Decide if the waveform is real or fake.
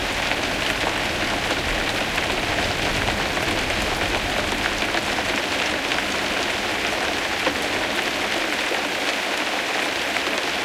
real